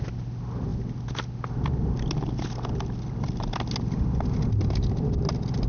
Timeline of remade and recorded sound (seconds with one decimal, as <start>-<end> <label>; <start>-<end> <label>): 0.0-5.7 recorded

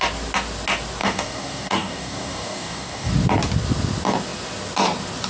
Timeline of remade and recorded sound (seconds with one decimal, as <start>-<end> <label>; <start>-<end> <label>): 0.0-1.0 recorded; 1.0-3.1 remade; 3.1-5.3 recorded

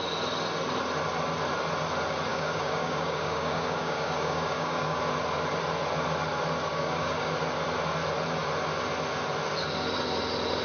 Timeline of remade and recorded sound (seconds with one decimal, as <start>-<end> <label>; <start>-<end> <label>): 0.0-2.3 recorded; 2.3-5.0 remade; 5.0-6.7 recorded; 6.7-7.3 remade; 7.3-10.6 recorded

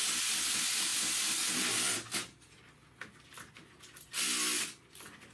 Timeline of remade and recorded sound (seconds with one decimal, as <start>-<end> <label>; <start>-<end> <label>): 0.0-5.3 recorded

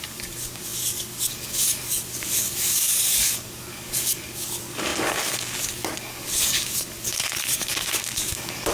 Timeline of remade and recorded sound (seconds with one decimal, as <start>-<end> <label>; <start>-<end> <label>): 0.0-8.7 remade

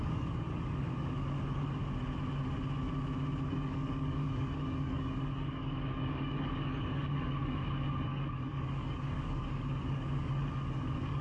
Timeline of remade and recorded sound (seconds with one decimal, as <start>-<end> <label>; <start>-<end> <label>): 0.0-1.8 remade; 1.8-3.5 recorded; 3.5-11.2 remade